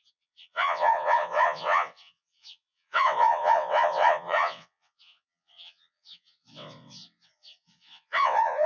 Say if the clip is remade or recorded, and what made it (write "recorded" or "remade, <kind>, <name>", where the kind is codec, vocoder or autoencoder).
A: remade, vocoder, WaveNeXt